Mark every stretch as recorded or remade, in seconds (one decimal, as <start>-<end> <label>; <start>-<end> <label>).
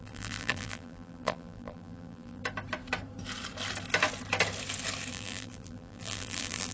0.0-2.4 remade; 2.4-5.1 recorded; 5.1-6.7 remade